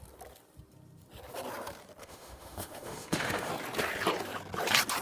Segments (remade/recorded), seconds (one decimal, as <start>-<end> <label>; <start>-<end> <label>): 0.0-2.0 recorded; 2.0-3.5 remade; 3.5-5.0 recorded